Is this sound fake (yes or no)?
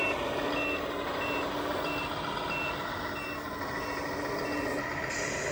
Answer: no